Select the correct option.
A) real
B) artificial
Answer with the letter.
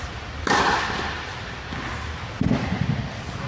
A